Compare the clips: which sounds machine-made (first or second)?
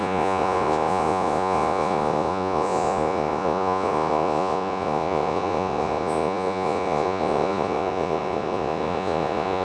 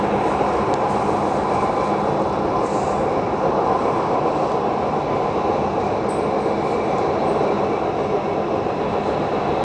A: first